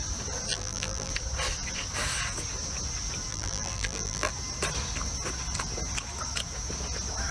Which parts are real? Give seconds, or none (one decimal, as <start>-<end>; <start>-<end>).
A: 0.0-0.5; 1.1-3.3; 4.3-7.3